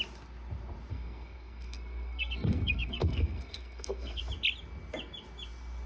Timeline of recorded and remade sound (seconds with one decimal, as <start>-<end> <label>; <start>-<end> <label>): 0.0-0.9 recorded; 0.9-4.2 remade; 4.2-5.9 recorded